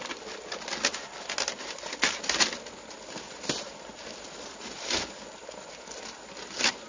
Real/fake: real